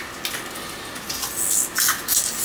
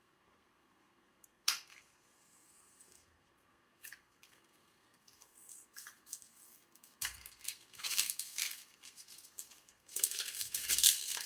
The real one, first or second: first